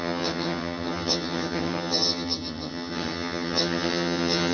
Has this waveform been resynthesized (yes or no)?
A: yes